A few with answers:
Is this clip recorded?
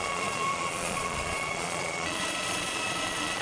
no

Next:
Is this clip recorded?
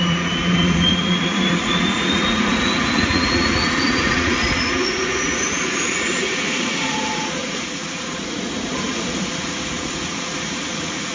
no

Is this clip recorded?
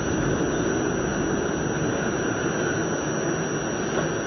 yes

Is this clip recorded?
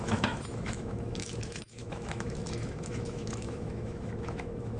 no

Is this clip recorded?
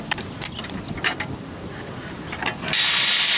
yes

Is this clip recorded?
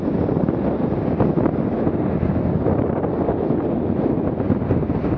yes